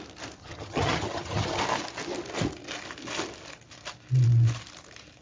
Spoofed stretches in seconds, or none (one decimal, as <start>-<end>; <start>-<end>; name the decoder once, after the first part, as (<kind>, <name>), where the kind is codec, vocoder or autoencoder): 0.4-1.6 (vocoder, HiFi-GAN)